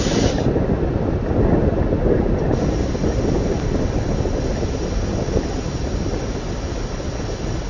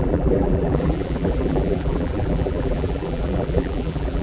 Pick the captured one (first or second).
first